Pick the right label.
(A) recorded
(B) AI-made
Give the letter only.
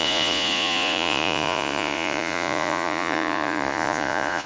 B